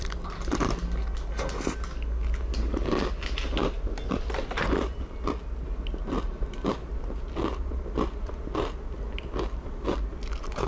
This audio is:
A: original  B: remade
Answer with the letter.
A